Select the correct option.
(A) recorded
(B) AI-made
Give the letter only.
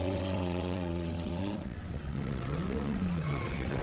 B